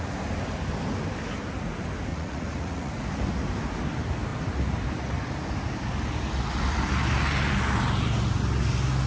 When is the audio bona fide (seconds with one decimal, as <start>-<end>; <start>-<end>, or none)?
0.0-2.1; 2.9-9.1